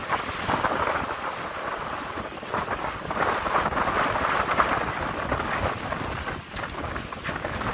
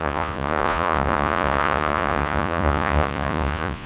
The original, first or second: first